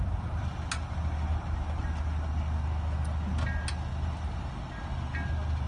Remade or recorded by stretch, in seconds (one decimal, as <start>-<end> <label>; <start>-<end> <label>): 0.0-5.7 recorded